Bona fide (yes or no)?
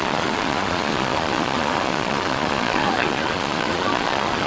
no